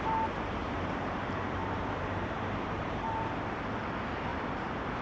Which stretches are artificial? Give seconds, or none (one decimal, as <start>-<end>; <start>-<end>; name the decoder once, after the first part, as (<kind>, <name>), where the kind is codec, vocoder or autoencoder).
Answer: 0.6-3.6 (vocoder, BigVGAN v2); 4.3-5.0